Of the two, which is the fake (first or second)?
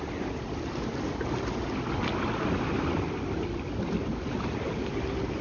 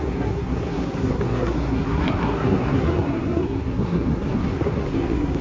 second